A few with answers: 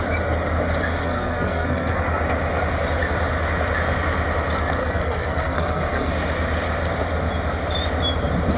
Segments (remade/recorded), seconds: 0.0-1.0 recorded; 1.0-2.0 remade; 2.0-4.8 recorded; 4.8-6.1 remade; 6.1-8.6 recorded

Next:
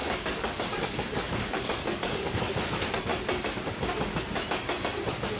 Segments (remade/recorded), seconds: 0.0-2.5 remade; 2.5-5.4 recorded

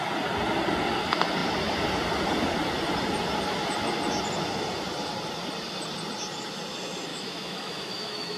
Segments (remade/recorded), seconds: 0.0-7.1 recorded; 7.1-8.4 remade